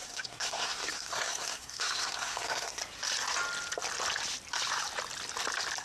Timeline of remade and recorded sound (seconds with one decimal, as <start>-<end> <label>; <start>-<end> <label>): 0.0-2.8 remade; 2.8-5.8 recorded